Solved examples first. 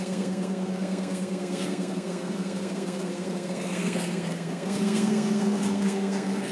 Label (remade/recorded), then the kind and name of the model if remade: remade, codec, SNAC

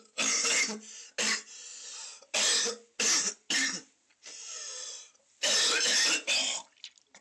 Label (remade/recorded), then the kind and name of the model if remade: recorded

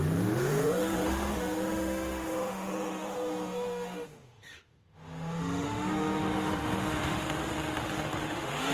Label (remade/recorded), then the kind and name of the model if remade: remade, autoencoder, DAC-VAE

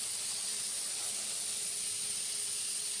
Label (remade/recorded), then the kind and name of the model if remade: recorded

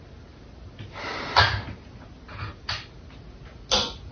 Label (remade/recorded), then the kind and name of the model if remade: recorded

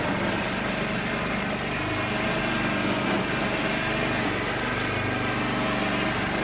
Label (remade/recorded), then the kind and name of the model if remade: recorded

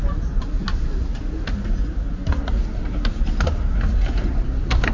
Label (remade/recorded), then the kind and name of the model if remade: recorded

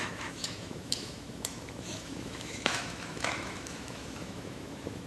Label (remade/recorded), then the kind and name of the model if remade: remade, autoencoder, DAC-VAE